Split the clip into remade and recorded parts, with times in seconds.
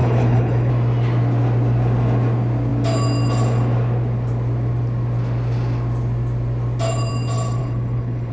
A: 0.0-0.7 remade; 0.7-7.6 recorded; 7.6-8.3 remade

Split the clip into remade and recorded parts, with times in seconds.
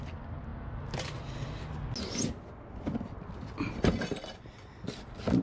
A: 0.0-5.4 recorded